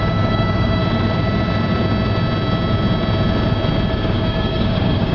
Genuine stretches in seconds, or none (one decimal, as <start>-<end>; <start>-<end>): 0.8-3.9